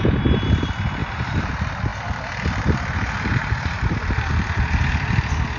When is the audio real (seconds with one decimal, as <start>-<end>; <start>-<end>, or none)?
0.0-1.0; 1.5-3.3; 4.3-5.6